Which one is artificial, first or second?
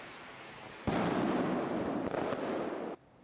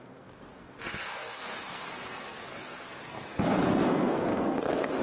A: second